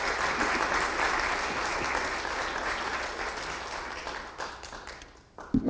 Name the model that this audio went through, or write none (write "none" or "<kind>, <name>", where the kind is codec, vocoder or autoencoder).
none